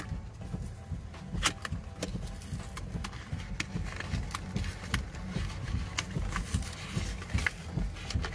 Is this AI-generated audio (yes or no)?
no